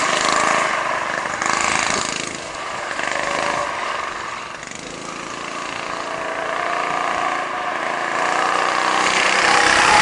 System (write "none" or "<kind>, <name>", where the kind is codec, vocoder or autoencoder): none